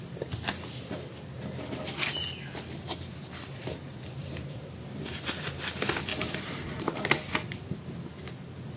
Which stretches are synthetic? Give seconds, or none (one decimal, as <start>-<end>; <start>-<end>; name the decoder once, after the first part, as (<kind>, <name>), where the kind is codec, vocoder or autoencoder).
4.2-4.9 (vocoder, BigVGAN v2); 6.1-7.0